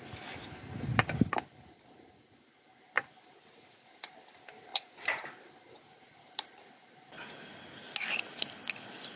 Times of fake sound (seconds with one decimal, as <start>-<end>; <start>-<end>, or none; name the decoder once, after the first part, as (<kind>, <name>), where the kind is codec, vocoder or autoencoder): 0.9-2.4 (vocoder, BigVGAN v2); 4.7-6.7